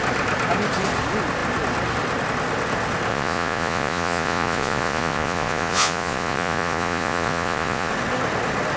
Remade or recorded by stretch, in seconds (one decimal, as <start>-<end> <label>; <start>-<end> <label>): 0.0-3.1 recorded; 3.1-7.9 remade; 7.9-8.8 recorded